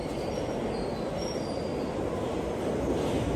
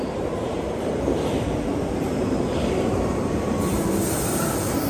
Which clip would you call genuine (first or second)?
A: first